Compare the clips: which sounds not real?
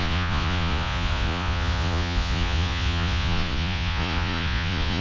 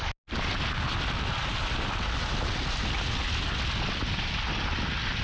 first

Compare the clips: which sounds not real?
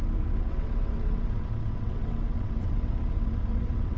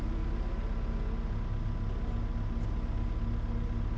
first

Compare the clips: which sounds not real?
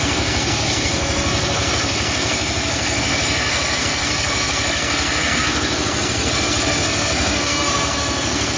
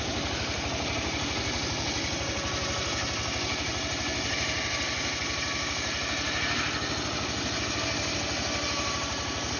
first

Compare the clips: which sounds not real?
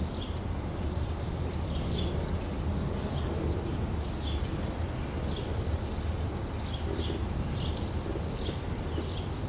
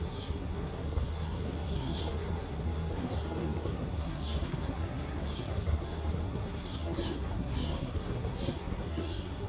second